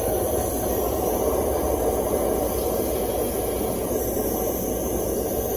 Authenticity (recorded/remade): recorded